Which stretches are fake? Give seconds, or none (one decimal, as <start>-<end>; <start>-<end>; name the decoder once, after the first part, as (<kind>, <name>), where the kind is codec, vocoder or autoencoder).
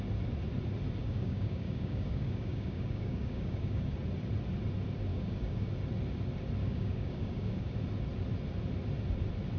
1.0-3.9 (codec, DAC); 5.1-5.7; 6.6-7.8